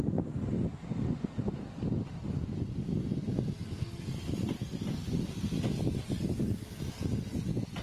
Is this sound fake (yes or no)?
no